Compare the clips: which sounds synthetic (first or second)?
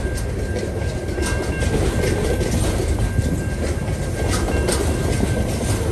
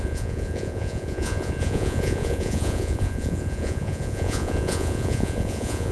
second